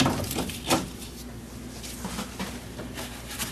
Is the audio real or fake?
real